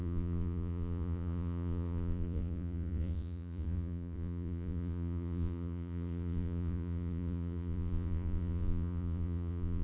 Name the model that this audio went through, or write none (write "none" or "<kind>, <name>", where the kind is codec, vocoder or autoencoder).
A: vocoder, Vocos